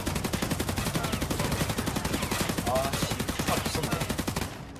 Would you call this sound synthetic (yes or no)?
no